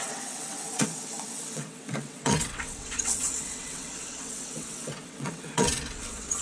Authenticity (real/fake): fake